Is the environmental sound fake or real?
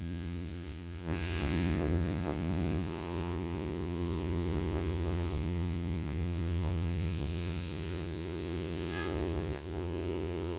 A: fake